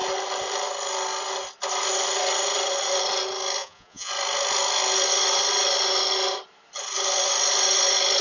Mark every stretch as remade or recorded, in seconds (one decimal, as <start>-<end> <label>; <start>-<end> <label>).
0.0-3.6 recorded; 3.6-4.1 remade; 4.1-8.2 recorded